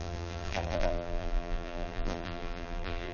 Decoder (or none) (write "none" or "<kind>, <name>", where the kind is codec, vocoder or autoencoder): vocoder, BigVGAN v2